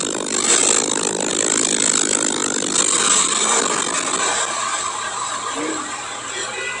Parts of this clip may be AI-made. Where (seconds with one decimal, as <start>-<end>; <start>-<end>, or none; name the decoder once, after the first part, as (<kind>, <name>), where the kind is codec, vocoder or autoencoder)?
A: none